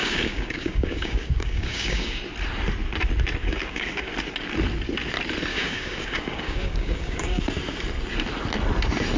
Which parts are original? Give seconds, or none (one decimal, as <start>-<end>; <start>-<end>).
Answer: 2.2-3.4; 4.1-5.5; 7.4-9.2